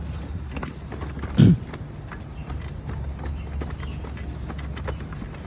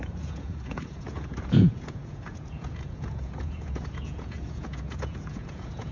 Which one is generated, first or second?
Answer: second